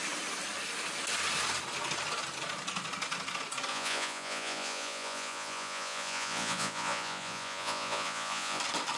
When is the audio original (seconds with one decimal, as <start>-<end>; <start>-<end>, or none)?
0.0-3.7; 8.6-9.0